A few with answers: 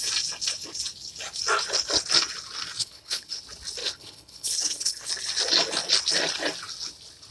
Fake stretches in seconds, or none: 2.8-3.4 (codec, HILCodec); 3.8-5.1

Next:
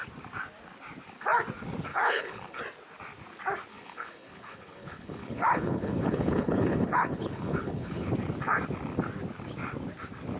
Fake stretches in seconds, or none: 1.9-2.6 (codec, HILCodec); 3.7-8.1